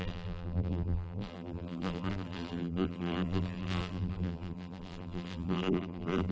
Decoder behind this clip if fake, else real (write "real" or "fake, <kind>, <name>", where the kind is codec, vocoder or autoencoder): fake, vocoder, BigVGAN v2